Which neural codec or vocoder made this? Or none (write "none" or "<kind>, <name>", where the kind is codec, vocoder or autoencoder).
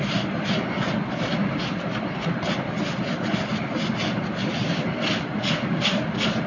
none